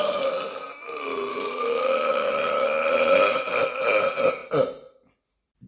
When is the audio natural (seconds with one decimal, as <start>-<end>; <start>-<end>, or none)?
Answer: 0.0-1.3; 2.3-5.7